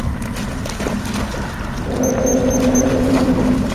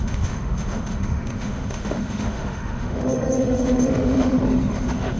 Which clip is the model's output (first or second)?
second